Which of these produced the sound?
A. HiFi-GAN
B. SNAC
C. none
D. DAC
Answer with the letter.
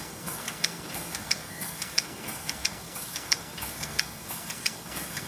B